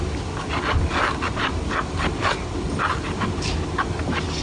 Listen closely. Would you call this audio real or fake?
real